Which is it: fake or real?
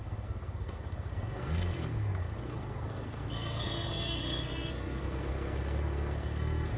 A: fake